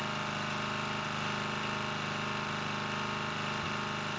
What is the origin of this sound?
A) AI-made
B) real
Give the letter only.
B